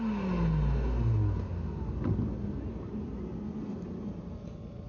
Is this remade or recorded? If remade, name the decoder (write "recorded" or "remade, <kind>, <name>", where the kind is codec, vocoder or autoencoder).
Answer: recorded